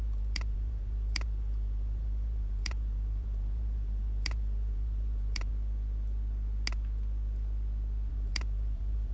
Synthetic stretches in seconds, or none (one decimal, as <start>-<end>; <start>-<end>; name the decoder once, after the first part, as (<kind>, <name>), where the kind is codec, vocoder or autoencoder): 0.0-5.5 (vocoder, BigVGAN v2); 8.1-9.1